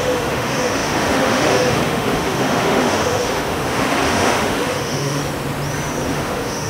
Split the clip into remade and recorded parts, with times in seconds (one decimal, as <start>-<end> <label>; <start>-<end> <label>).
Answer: 0.0-5.2 remade; 5.2-6.1 recorded; 6.1-6.7 remade